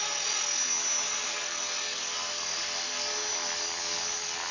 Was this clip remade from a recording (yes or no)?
no